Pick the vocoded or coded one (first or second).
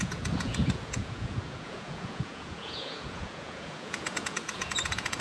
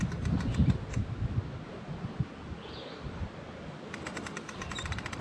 first